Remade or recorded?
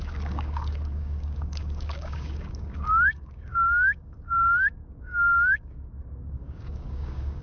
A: remade